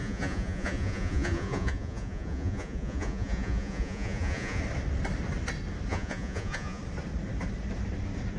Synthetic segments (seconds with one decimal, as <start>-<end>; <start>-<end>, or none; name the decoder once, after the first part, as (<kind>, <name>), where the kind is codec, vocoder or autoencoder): 0.0-4.6 (vocoder, Vocos); 5.9-6.8